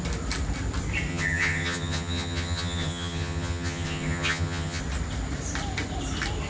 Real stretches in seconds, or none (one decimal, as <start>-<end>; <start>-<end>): 0.0-1.1; 4.8-6.5